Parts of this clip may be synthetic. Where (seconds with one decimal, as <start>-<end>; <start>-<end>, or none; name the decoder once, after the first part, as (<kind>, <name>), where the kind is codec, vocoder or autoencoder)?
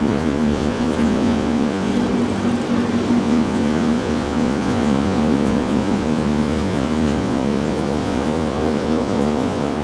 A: 0.0-1.9 (vocoder, Vocos); 3.2-9.8